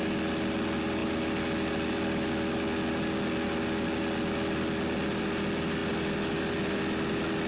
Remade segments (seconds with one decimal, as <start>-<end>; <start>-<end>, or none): none